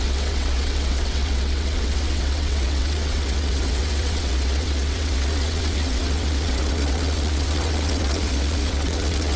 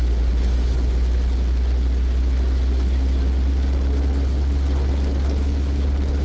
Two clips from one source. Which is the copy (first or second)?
first